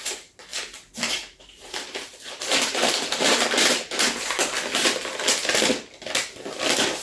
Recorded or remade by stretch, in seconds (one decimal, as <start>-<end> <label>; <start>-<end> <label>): 0.0-0.5 remade; 0.5-1.1 recorded; 1.1-4.4 remade; 4.4-7.0 recorded